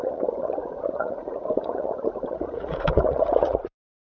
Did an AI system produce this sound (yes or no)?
yes